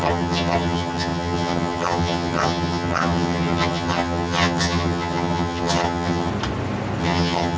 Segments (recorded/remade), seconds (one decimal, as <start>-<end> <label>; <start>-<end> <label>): 0.0-6.3 remade; 6.3-7.0 recorded; 7.0-7.6 remade